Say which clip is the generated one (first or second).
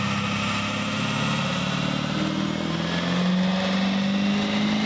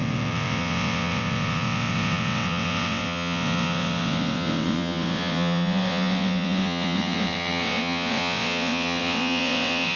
second